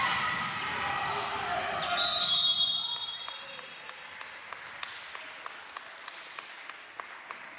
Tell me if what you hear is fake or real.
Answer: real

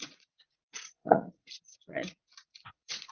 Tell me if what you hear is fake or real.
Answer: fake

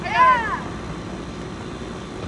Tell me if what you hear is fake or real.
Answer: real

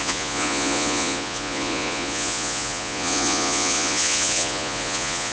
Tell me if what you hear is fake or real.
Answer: fake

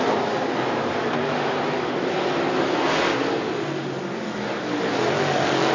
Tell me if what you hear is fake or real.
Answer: real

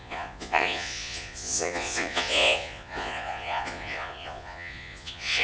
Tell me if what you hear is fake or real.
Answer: fake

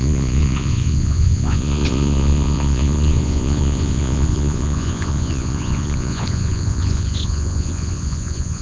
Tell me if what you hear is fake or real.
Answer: fake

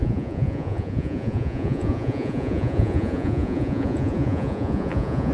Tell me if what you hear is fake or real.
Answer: fake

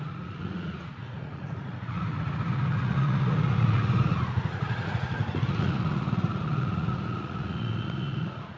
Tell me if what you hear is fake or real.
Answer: fake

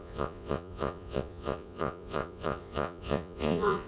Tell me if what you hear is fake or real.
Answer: fake